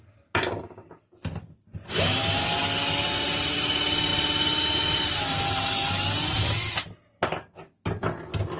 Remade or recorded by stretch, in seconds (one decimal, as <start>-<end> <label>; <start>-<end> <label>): 0.0-8.6 recorded